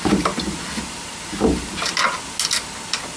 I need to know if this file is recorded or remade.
recorded